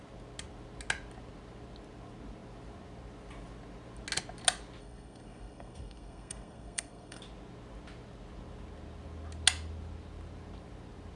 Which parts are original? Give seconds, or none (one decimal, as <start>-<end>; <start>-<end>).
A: 0.0-4.8; 7.2-11.2